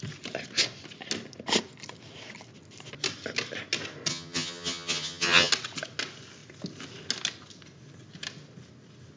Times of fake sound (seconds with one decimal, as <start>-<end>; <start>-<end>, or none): 4.1-5.5